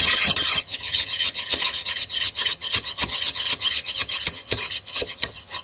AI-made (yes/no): yes